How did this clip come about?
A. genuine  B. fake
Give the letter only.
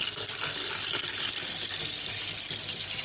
A